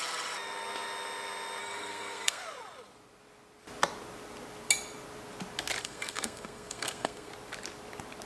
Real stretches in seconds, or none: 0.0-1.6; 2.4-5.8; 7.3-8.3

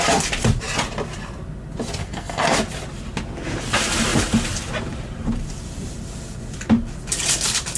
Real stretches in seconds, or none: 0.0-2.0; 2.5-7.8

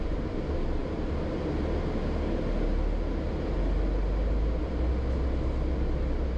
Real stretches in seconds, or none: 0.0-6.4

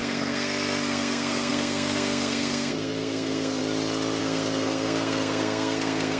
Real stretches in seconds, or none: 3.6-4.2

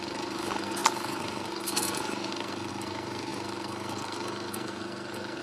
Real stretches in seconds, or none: none

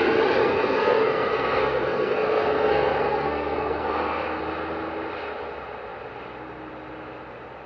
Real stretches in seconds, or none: 0.0-0.4; 4.4-7.7